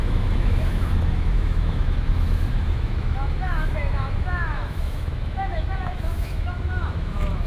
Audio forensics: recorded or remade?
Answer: remade